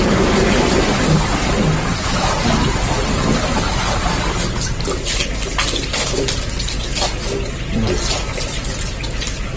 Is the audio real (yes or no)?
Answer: yes